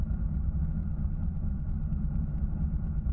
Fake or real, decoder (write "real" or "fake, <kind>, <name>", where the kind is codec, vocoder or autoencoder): fake, vocoder, BigVGAN v2